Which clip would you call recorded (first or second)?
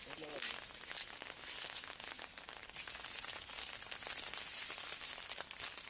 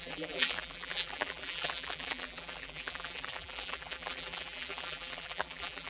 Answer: first